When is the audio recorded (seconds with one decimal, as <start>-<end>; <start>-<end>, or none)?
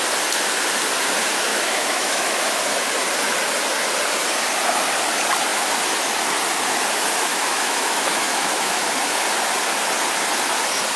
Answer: 0.0-1.5; 2.4-7.3; 8.9-11.0